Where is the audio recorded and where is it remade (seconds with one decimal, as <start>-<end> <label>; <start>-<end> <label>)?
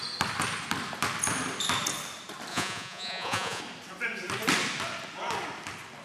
0.0-2.5 recorded; 2.5-3.6 remade; 3.6-6.0 recorded